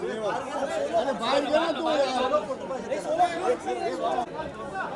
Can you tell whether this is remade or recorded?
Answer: recorded